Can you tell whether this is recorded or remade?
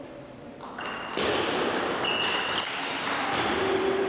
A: remade